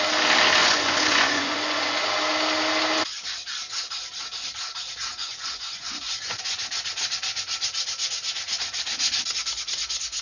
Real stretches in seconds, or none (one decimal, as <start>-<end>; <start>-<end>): 0.0-0.6; 2.0-5.1; 6.6-10.2